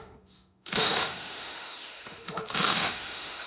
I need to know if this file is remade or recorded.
remade